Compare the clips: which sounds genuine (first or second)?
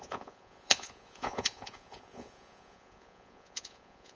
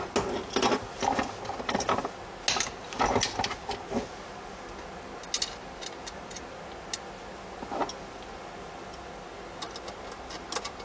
second